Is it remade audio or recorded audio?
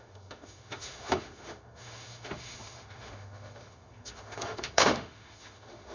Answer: remade